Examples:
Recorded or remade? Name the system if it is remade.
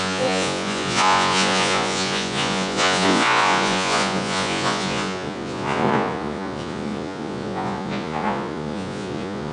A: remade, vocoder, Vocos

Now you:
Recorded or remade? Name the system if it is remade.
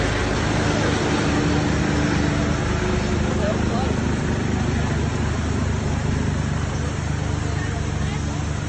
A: recorded